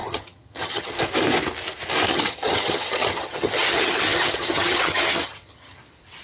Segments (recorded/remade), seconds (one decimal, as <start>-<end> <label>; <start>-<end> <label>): 0.0-1.0 remade; 1.0-2.1 recorded; 2.1-5.8 remade; 5.8-6.2 recorded

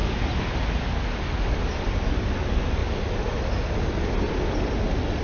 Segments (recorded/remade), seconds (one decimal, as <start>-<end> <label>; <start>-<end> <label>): 0.0-5.2 recorded